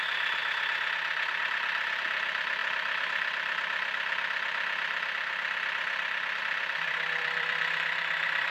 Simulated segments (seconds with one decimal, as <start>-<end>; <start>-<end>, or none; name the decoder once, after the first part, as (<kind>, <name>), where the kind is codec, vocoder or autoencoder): 0.0-0.4 (vocoder, BigVGAN v2); 1.4-8.5